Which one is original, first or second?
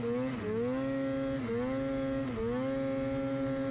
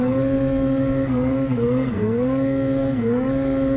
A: first